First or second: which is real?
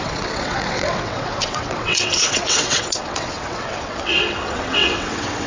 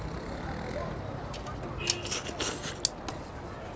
second